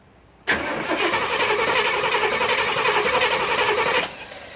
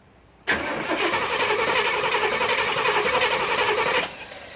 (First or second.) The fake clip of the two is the second